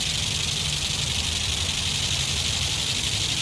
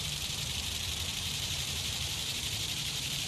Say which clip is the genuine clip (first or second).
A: first